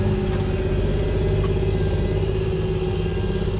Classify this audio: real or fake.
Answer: real